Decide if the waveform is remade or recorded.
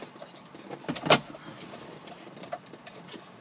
remade